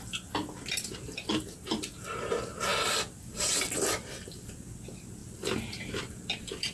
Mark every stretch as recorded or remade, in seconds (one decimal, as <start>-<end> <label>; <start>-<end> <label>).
0.0-6.7 remade